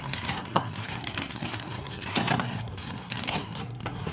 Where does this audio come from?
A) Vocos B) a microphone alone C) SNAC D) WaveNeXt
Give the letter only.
C